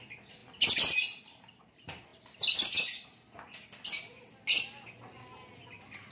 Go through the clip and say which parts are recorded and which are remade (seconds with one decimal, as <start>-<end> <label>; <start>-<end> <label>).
0.0-6.1 recorded